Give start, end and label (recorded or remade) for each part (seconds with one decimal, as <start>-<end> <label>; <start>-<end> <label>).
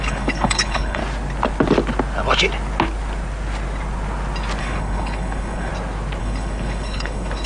0.0-1.0 remade; 1.0-4.6 recorded; 4.6-5.7 remade; 5.7-6.2 recorded; 6.2-7.5 remade